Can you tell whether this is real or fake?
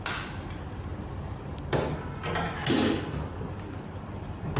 real